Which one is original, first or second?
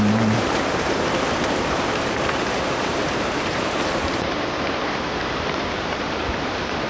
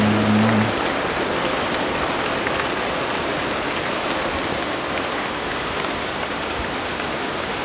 second